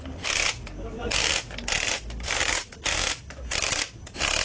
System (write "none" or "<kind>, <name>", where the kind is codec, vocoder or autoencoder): none